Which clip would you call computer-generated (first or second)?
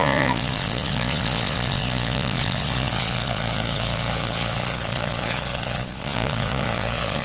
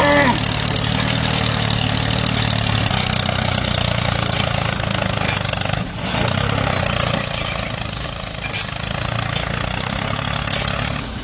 first